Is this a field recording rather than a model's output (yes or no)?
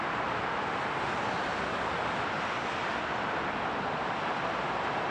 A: no